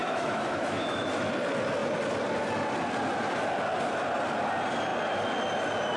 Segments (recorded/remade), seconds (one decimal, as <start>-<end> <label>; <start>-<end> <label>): 0.0-1.3 remade; 1.3-6.0 recorded